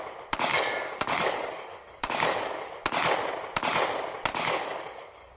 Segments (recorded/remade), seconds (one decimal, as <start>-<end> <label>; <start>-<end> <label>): 0.0-0.5 recorded; 0.5-2.7 remade; 2.7-4.3 recorded; 4.3-5.4 remade